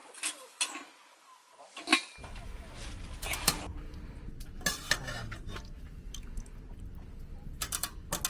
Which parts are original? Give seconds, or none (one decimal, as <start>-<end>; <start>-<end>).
0.0-8.3